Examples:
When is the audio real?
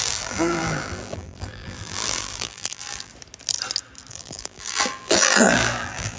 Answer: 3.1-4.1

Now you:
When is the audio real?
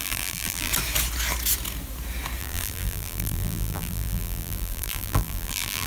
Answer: 0.7-2.4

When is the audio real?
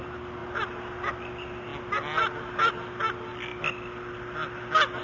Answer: 0.0-5.0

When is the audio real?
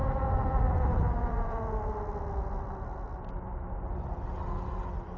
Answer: 0.0-5.2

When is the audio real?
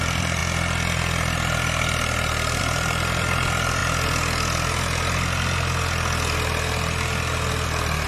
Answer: 0.4-2.6; 3.8-8.1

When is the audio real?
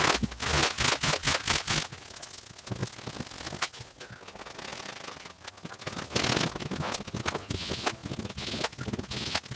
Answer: 0.0-2.8; 3.4-4.7; 5.5-9.6